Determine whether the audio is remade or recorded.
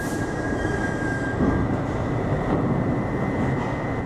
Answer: remade